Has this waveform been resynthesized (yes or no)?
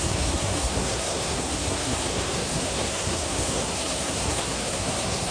yes